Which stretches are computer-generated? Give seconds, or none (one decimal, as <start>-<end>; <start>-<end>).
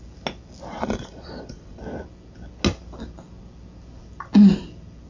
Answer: 0.7-1.8